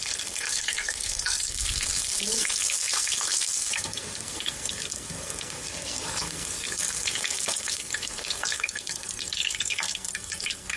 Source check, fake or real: fake